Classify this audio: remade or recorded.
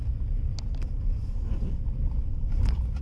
recorded